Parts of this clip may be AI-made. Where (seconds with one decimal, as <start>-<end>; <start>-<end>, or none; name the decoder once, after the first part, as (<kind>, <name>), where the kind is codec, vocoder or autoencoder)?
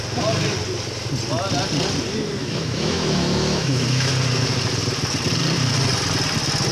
2.4-4.1 (autoencoder, DAC-VAE)